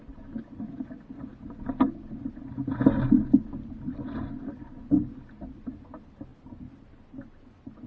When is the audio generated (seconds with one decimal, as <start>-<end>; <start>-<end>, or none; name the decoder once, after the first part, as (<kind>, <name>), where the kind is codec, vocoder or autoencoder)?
none